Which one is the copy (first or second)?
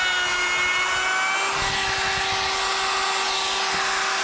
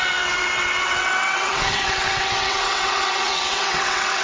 second